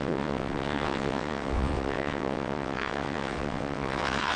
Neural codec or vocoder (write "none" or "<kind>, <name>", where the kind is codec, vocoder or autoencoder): vocoder, WaveNeXt